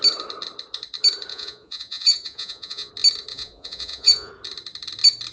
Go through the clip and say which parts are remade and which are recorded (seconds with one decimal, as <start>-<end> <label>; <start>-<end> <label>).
0.0-1.3 recorded; 1.3-2.9 remade; 2.9-3.3 recorded; 3.3-4.3 remade; 4.3-5.3 recorded